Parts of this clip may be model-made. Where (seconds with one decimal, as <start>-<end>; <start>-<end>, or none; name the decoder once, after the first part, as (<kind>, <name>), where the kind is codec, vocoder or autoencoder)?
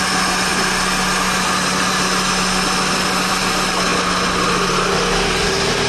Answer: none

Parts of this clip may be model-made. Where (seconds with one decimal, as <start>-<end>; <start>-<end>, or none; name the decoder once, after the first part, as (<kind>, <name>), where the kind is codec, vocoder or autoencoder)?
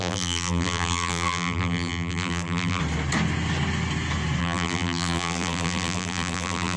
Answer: 0.0-2.8 (vocoder, BigVGAN v2); 4.4-6.8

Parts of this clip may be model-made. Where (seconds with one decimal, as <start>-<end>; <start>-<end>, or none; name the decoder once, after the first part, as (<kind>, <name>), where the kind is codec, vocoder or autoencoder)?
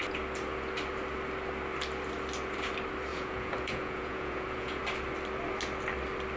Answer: 3.1-4.8 (vocoder, Vocos)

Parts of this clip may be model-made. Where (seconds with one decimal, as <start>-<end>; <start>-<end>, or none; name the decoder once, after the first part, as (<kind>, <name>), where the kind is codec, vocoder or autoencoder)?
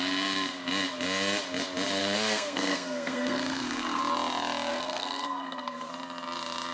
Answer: 2.0-4.0 (codec, SNAC); 4.7-5.9